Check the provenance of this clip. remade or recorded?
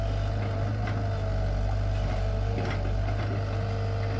recorded